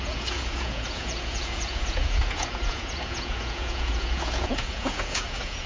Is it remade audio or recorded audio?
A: remade